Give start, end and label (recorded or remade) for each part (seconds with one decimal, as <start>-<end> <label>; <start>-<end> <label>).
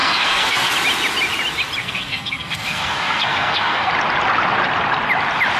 0.0-0.7 remade; 0.7-1.8 recorded; 1.8-3.9 remade; 3.9-5.6 recorded